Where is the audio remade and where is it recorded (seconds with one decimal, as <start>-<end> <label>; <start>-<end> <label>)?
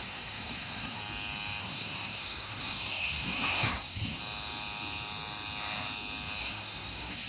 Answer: 0.0-1.0 remade; 1.0-1.6 recorded; 1.6-4.2 remade; 4.2-6.4 recorded; 6.4-7.3 remade